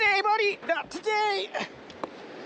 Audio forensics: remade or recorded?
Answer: recorded